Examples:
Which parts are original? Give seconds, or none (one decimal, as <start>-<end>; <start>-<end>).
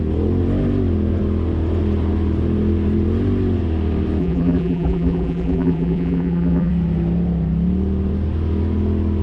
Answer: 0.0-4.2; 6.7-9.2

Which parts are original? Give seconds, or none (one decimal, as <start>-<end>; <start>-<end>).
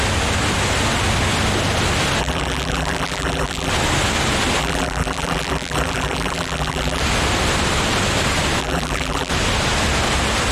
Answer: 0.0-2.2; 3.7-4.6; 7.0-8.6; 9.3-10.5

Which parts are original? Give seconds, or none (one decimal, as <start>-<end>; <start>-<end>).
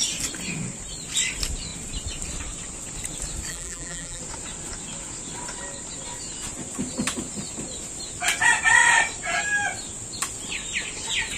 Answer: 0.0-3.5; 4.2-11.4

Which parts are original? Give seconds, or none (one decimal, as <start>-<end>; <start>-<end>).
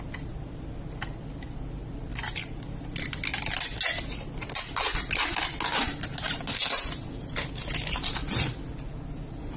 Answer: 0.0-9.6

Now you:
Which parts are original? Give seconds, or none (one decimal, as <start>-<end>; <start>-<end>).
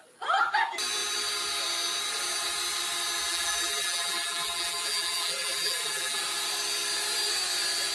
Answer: 0.0-3.3; 6.2-7.9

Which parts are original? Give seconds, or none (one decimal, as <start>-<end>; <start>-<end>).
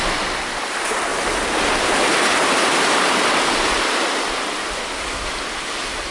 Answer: 0.0-6.1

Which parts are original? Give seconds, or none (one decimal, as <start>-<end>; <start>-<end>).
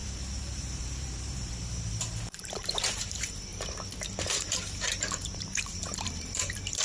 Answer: 3.5-4.5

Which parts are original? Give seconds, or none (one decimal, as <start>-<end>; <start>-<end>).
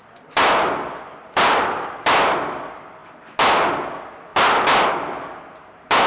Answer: 3.0-3.7; 4.3-6.1